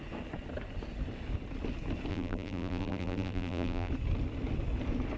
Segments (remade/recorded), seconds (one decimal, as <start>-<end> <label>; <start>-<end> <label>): 0.0-2.1 recorded; 2.1-3.9 remade; 3.9-5.2 recorded